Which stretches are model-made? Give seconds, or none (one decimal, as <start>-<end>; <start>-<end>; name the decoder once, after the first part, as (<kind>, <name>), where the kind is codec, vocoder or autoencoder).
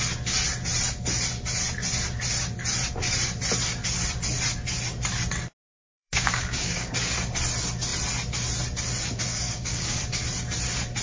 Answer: 5.7-6.9 (codec, DAC); 9.3-10.0